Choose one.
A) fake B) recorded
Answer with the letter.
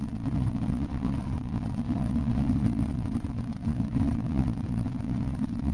A